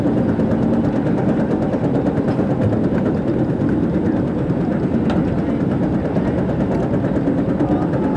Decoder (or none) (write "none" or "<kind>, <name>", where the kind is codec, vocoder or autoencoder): none